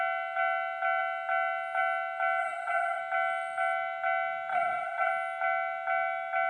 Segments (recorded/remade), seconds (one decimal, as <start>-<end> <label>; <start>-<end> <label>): 0.0-2.4 recorded; 2.4-3.0 remade; 3.0-4.5 recorded; 4.5-5.1 remade; 5.1-6.5 recorded